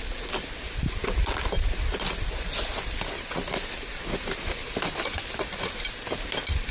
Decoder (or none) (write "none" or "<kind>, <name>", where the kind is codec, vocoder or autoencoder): none